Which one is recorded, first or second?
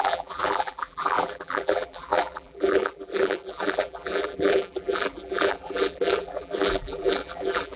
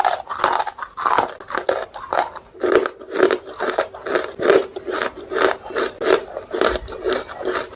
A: second